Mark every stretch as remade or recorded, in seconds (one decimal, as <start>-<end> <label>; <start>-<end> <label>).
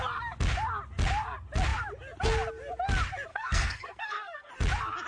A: 0.0-3.3 recorded; 3.3-4.5 remade; 4.5-5.1 recorded